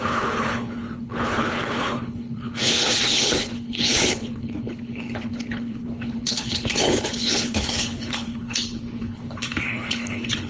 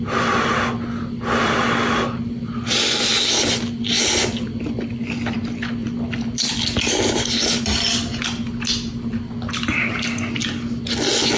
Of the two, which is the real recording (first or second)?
second